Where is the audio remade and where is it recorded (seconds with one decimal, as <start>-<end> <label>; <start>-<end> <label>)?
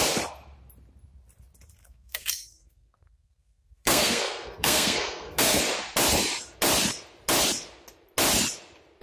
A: 0.0-1.8 recorded; 1.8-5.6 remade; 5.6-9.0 recorded